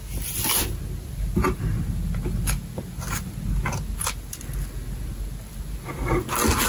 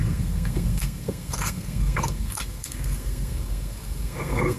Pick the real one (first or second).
first